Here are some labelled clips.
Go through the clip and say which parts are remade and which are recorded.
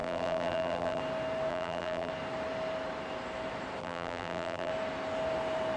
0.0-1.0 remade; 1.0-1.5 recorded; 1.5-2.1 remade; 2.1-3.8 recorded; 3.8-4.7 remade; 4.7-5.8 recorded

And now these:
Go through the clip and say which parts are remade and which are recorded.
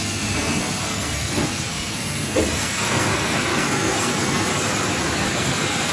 0.0-4.5 remade; 4.5-5.3 recorded; 5.3-5.9 remade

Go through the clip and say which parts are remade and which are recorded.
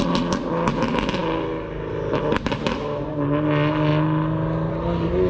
0.0-5.3 recorded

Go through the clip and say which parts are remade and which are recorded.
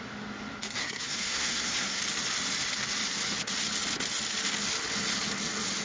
0.0-0.8 recorded; 0.8-2.0 remade; 2.0-5.8 recorded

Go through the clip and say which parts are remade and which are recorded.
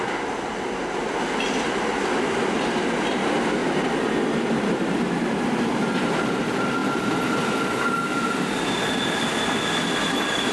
0.0-10.5 recorded